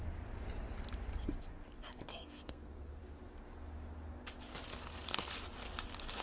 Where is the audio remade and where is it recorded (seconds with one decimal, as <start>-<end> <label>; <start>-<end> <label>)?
0.0-2.1 recorded; 2.1-3.0 remade; 3.0-6.2 recorded